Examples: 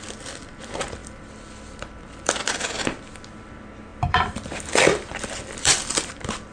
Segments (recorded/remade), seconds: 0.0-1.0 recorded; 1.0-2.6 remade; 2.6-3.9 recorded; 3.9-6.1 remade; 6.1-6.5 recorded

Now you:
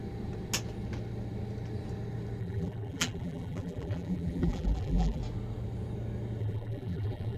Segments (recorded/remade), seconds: 0.0-2.4 recorded; 2.4-5.2 remade; 5.2-6.4 recorded; 6.4-7.4 remade

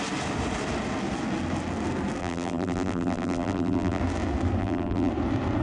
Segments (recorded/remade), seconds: 0.0-2.2 recorded; 2.2-4.0 remade; 4.0-4.6 recorded; 4.6-5.1 remade; 5.1-5.6 recorded

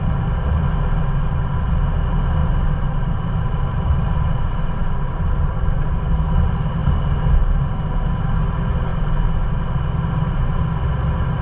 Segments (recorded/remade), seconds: 0.0-2.4 recorded; 2.4-6.3 remade; 6.3-8.9 recorded; 8.9-10.6 remade; 10.6-11.4 recorded

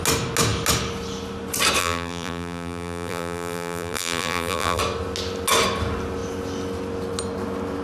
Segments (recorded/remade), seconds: 0.0-1.8 recorded; 1.8-4.8 remade; 4.8-7.8 recorded

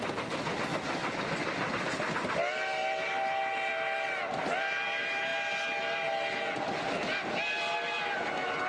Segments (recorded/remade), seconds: 0.0-1.0 recorded; 1.0-1.7 remade; 1.7-8.7 recorded